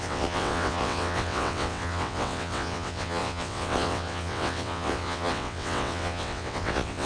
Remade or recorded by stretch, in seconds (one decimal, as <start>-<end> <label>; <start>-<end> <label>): 0.0-7.1 remade